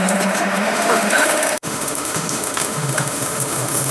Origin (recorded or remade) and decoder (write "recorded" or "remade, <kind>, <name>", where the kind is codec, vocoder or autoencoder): remade, autoencoder, DAC-VAE